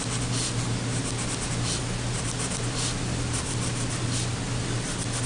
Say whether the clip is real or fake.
real